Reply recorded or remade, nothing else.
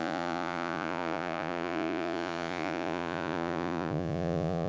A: remade